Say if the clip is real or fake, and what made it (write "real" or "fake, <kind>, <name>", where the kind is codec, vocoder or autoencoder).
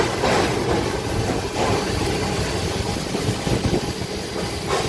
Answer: real